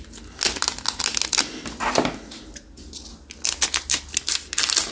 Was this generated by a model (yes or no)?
no